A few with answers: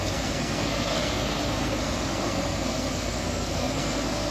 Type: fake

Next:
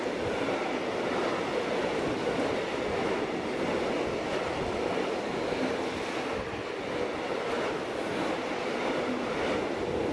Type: real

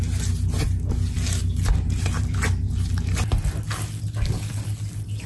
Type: real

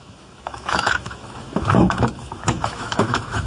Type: fake